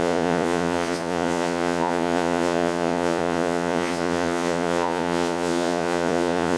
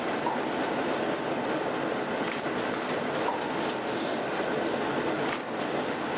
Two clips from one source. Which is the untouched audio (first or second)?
second